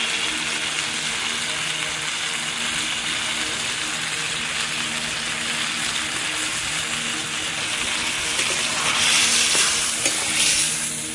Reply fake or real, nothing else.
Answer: real